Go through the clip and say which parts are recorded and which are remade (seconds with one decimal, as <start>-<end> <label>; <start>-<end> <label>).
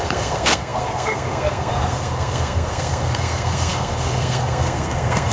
0.0-5.3 remade